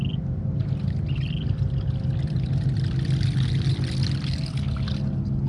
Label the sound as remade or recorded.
recorded